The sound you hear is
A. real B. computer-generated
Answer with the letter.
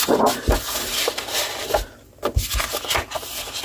A